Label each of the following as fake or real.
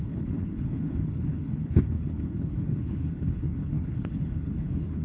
fake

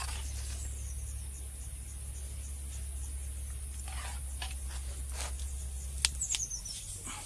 real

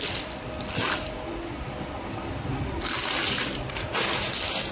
real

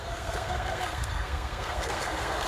fake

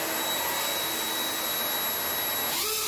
real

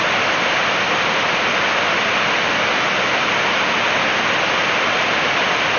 real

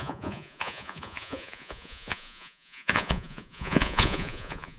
fake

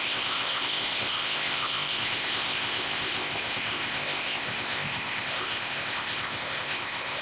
fake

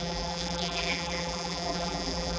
fake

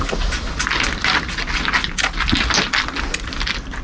real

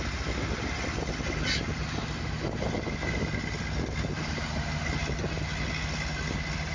real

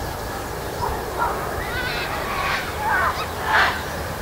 real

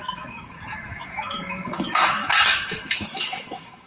fake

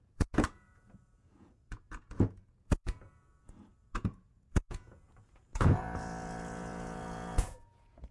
fake